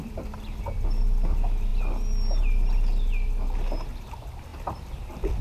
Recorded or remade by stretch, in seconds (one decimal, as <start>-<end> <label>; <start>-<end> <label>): 0.0-5.4 recorded